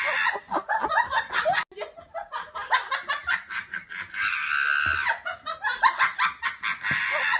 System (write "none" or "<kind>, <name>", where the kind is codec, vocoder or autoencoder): none